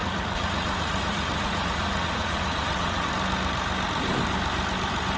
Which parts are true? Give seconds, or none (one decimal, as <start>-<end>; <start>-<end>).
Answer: 3.1-5.2